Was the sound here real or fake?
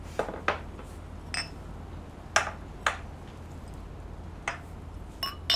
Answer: real